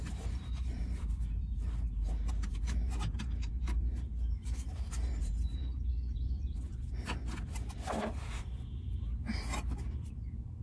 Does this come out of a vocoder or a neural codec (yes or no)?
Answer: yes